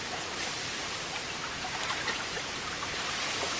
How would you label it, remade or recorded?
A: remade